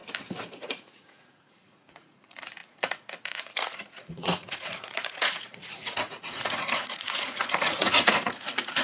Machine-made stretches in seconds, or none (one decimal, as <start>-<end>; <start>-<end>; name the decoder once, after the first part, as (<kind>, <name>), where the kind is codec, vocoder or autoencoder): 0.5-8.8 (vocoder, Vocos)